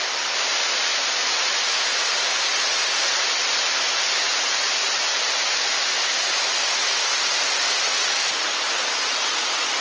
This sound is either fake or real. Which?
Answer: real